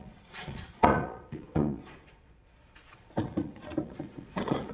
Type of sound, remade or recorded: remade